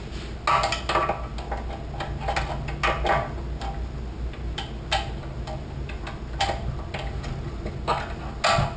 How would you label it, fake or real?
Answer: real